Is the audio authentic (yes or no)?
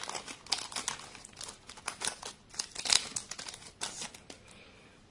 yes